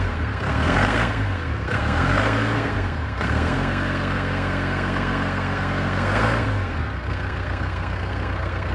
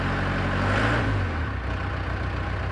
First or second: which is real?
second